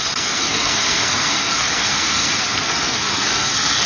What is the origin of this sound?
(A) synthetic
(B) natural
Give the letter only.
A